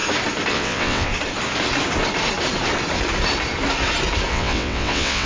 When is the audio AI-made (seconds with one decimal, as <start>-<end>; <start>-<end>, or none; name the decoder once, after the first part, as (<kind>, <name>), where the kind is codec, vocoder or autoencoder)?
0.5-1.1 (vocoder, WaveNeXt); 4.3-5.3